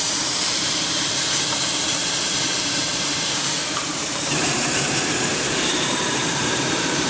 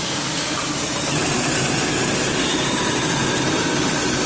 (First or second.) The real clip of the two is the second